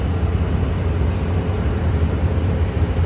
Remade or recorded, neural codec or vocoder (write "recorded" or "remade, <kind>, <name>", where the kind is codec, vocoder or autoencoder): recorded